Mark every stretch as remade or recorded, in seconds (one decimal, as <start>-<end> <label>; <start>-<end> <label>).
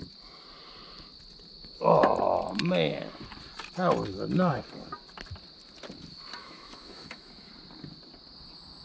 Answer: 0.0-6.4 recorded; 6.4-7.5 remade; 7.5-8.8 recorded